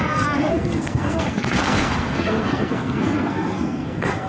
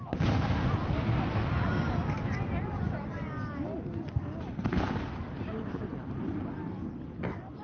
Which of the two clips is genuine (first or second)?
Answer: second